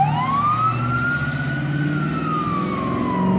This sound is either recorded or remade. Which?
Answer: recorded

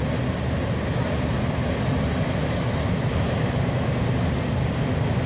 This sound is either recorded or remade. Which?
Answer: recorded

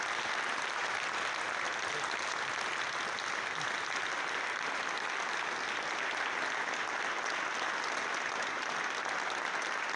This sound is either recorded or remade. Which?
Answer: recorded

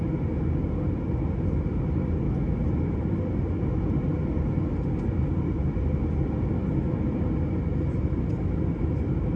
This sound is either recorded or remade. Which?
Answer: recorded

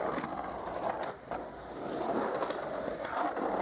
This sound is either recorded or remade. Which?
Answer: recorded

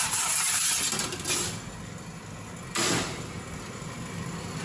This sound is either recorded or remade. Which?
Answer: recorded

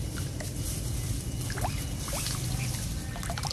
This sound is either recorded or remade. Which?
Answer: recorded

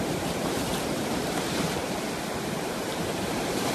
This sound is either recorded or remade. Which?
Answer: remade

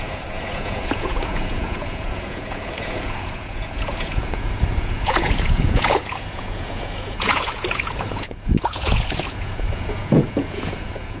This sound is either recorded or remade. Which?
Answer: remade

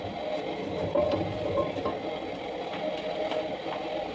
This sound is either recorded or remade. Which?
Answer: recorded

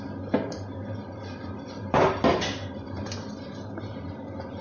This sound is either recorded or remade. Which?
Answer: remade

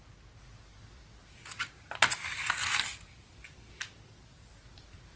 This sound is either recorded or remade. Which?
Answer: recorded